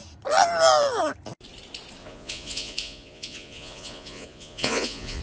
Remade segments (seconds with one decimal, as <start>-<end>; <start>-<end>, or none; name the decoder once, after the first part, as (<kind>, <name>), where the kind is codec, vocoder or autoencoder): 2.0-5.2 (vocoder, Vocos)